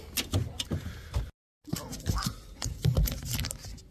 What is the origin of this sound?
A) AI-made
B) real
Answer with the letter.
B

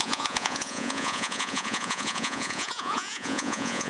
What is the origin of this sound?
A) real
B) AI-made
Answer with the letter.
B